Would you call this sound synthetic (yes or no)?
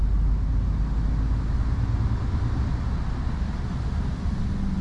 no